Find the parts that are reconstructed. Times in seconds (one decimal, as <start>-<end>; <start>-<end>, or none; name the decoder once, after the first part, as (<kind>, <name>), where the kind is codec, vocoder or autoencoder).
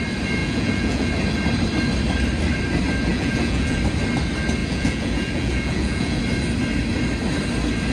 0.4-1.1 (vocoder, Vocos); 3.1-3.8; 4.6-6.2